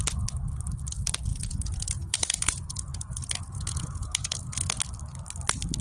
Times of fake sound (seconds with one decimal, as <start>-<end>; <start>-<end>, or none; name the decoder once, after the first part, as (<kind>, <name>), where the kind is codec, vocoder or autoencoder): 1.3-4.8 (vocoder, Vocos)